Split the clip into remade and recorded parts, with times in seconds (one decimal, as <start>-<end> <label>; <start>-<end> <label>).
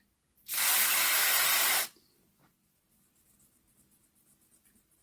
0.0-5.0 recorded